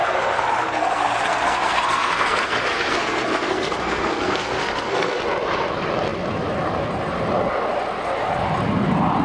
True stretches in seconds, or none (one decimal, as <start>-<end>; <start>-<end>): 5.2-9.2